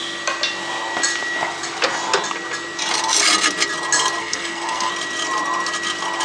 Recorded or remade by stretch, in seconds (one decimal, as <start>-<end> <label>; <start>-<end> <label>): 0.0-4.2 recorded; 4.2-4.9 remade; 4.9-6.2 recorded